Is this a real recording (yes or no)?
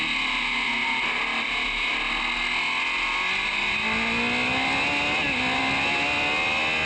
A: yes